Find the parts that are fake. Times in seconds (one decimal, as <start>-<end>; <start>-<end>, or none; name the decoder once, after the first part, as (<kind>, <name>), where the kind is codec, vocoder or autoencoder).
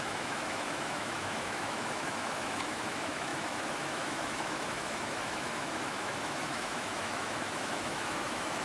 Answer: 0.0-8.6 (autoencoder, DAC-VAE)